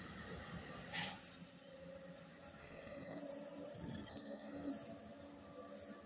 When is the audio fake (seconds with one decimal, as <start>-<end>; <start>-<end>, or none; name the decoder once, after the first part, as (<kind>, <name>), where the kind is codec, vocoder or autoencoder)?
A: 2.6-3.2 (codec, SNAC); 4.1-4.7